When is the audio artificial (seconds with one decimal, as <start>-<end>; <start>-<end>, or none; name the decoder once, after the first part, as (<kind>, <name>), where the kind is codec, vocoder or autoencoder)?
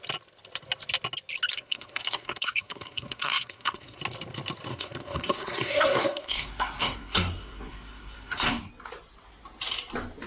1.5-4.0 (codec, SNAC); 4.7-8.7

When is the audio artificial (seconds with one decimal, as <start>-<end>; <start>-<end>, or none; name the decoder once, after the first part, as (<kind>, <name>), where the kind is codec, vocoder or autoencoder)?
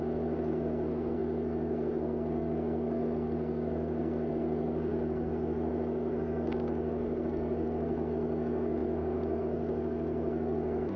0.0-11.0 (codec, SNAC)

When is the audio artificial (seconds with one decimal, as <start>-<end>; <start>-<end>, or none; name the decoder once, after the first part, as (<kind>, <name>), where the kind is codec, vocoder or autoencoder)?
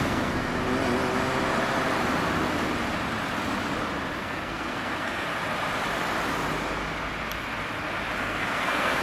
0.0-0.5 (codec, SNAC); 4.2-5.3; 8.2-9.0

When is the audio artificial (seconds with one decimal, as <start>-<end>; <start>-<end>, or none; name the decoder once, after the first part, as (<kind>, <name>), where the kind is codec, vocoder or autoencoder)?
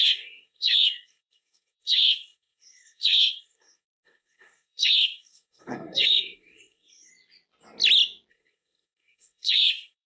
0.0-7.1 (codec, SNAC); 8.3-10.1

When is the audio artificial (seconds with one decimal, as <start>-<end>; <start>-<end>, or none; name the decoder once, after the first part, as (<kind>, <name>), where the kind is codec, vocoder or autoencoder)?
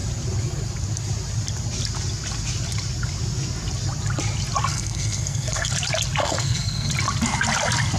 4.7-5.7 (codec, SNAC); 6.2-6.9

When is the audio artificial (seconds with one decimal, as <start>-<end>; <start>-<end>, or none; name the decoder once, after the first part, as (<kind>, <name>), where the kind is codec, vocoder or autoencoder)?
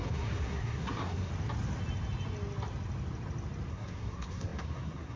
0.0-1.3 (codec, SNAC); 3.7-5.2